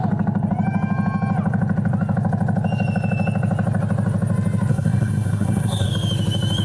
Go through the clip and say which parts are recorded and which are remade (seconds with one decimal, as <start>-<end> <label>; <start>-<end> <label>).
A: 0.0-4.7 recorded; 4.7-5.9 remade; 5.9-6.6 recorded